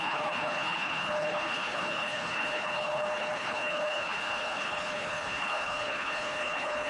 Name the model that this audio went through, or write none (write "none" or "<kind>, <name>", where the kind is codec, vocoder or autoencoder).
codec, HILCodec